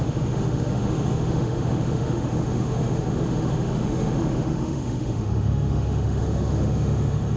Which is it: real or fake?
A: fake